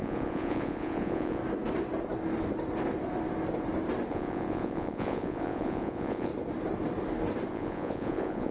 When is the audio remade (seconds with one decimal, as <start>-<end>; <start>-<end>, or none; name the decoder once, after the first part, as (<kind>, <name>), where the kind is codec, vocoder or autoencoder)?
0.0-1.4 (vocoder, Vocos); 4.1-6.3; 7.5-8.5